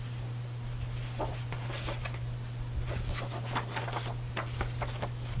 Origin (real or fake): real